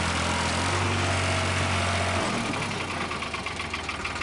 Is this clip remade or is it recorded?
recorded